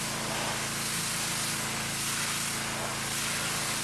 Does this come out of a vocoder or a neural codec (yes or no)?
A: no